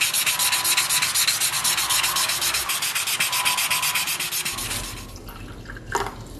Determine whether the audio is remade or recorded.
recorded